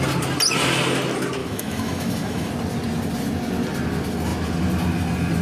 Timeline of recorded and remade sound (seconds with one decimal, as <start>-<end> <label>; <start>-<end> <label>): 0.0-1.4 recorded; 1.4-2.5 remade; 2.5-5.4 recorded